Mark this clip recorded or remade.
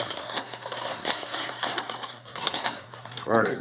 remade